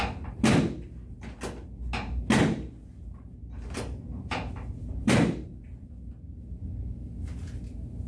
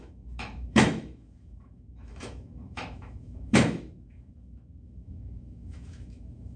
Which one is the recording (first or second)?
first